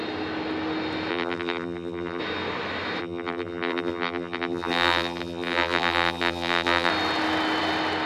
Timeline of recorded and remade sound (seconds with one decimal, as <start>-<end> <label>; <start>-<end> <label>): 0.0-1.1 recorded; 1.1-2.2 remade; 2.2-3.0 recorded; 3.0-6.9 remade; 6.9-8.1 recorded

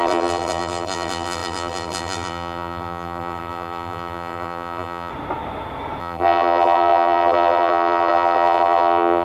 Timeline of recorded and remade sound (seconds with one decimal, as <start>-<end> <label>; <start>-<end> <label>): 0.0-5.1 remade; 5.1-6.0 recorded; 6.0-9.2 remade